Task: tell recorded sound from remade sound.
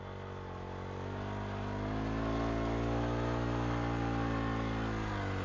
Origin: recorded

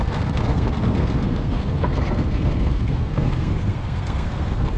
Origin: remade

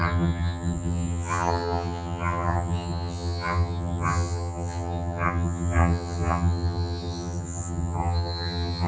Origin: remade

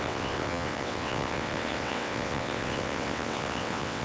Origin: remade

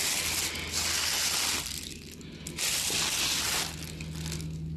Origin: recorded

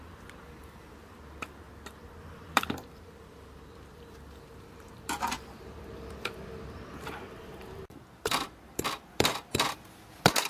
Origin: remade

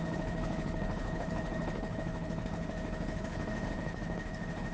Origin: remade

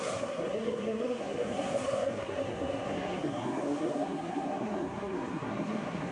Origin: remade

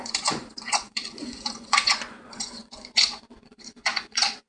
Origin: remade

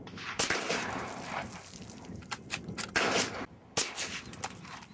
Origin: recorded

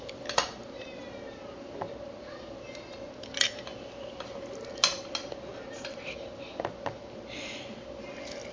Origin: recorded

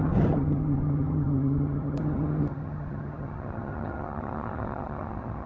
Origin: remade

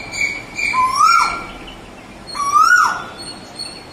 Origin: recorded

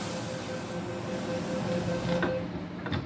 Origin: recorded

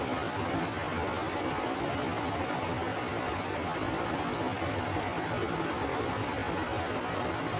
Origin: recorded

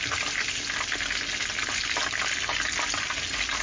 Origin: recorded